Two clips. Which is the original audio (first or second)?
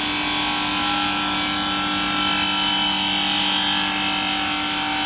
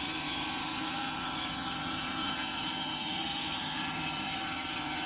first